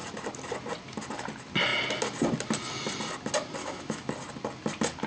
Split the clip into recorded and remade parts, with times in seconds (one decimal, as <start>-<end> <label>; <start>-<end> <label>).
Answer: 0.0-3.6 recorded; 3.6-4.1 remade; 4.1-5.1 recorded